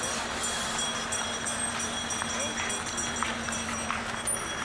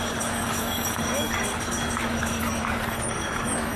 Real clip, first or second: first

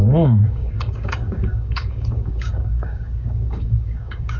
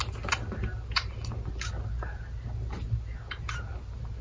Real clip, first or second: second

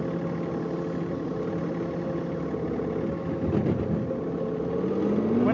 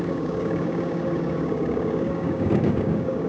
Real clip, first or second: first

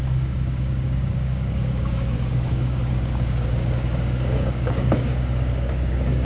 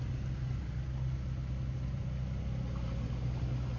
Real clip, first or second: second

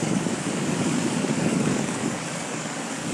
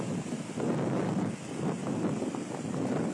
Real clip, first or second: second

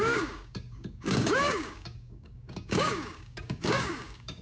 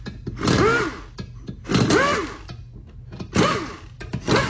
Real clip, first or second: second